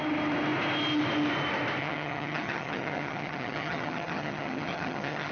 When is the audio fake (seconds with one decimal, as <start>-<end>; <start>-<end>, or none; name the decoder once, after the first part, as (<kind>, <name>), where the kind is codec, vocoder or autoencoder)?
1.8-5.3 (vocoder, HiFi-GAN)